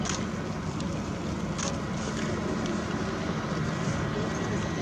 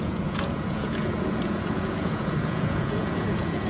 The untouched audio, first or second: first